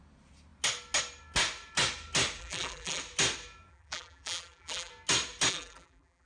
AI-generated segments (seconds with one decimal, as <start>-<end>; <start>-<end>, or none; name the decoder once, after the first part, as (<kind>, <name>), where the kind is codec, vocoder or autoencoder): 2.4-3.0 (vocoder, BigVGAN v2); 3.7-4.9; 5.5-6.3